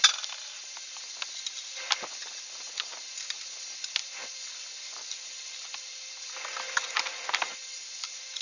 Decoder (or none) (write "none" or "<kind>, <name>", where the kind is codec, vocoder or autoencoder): none